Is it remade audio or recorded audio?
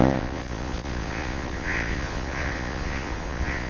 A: remade